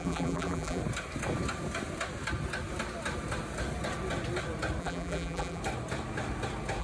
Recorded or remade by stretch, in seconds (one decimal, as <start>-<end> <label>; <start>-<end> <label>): 0.0-0.8 remade; 0.8-4.8 recorded; 4.8-5.6 remade; 5.6-6.8 recorded